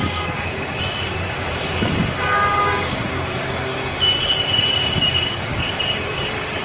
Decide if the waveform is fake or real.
fake